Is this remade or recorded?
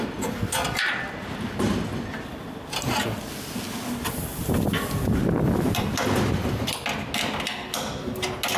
recorded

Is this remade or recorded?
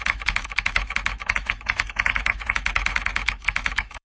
remade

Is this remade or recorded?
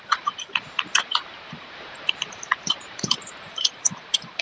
remade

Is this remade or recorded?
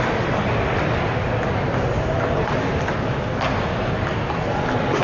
recorded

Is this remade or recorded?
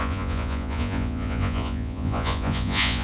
remade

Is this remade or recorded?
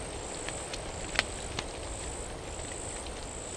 recorded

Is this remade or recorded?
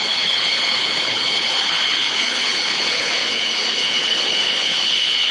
remade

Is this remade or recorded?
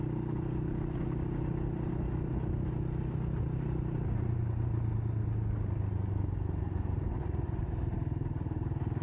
recorded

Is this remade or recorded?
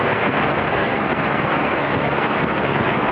remade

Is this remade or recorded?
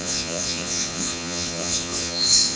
remade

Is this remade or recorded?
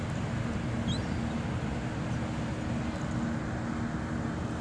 recorded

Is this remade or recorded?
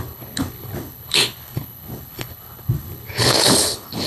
remade